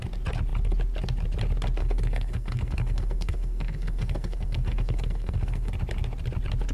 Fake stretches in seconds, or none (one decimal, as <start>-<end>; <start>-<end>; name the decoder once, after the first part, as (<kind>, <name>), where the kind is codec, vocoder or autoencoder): 1.8-5.7 (codec, SNAC)